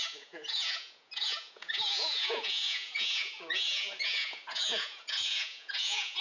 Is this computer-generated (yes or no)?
yes